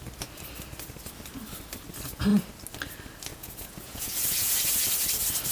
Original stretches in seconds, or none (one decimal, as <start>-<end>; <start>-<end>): 0.0-3.3; 4.7-5.5